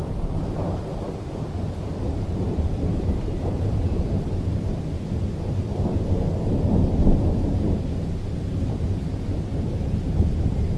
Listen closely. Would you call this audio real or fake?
fake